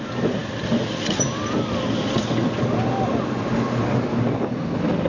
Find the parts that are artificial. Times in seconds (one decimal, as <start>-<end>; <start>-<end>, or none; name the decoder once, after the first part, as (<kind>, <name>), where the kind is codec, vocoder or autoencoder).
none